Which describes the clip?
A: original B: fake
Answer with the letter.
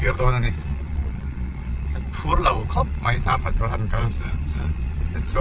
B